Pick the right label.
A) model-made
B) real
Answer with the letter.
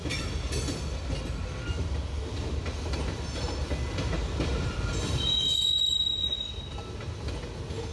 B